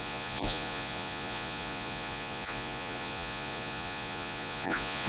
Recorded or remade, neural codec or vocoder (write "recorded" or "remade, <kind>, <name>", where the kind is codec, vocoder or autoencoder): remade, vocoder, Vocos